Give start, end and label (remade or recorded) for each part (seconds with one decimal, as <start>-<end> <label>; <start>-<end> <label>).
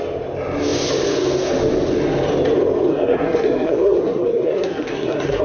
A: 0.0-2.9 recorded; 2.9-5.4 remade